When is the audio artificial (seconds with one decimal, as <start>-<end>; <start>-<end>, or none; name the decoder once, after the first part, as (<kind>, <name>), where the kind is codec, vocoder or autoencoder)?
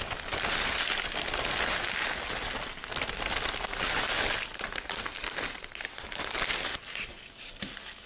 none